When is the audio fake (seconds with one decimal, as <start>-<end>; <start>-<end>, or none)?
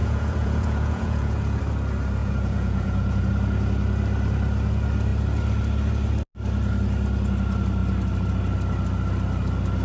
0.0-1.6; 2.2-3.3